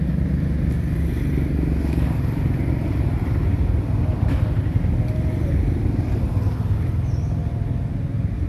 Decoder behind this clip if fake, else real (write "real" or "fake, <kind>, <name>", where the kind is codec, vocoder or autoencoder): real